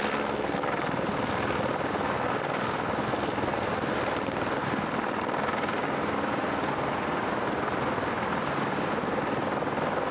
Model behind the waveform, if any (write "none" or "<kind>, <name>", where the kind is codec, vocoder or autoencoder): none